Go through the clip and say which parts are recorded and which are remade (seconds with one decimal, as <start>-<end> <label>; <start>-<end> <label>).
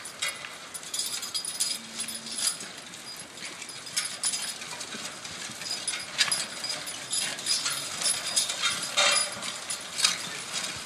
0.0-10.9 recorded